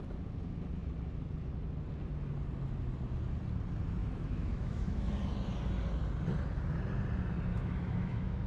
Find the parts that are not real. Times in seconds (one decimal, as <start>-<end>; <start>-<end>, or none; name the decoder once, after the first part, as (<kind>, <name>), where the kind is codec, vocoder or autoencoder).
4.0-5.1 (autoencoder, DAC-VAE); 7.5-8.5